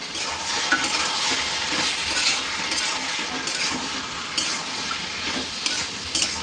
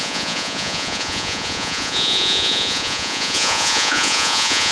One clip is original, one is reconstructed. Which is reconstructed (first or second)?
second